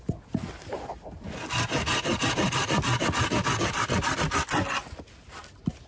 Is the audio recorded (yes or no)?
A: yes